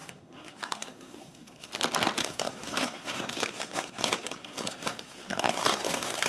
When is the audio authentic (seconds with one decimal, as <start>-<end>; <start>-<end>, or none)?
1.7-2.2